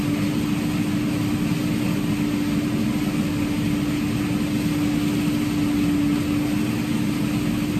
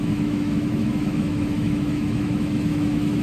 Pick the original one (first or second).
first